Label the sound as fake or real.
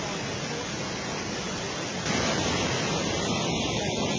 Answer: real